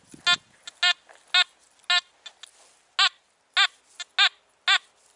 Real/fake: real